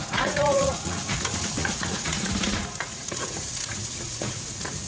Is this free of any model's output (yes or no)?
no